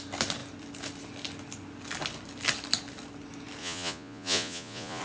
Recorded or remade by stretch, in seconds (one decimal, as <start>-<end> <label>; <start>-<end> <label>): 0.0-3.6 recorded; 3.6-5.0 remade